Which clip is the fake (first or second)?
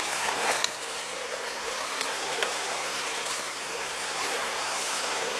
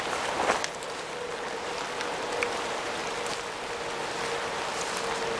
first